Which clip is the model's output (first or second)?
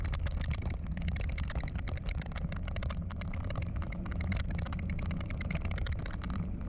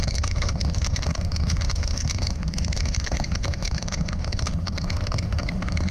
second